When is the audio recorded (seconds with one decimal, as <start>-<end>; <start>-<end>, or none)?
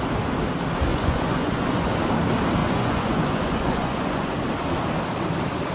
0.0-0.9; 1.9-2.6; 4.3-5.7